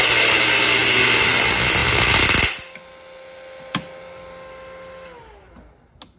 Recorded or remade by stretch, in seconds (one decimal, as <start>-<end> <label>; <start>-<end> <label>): 0.0-6.2 recorded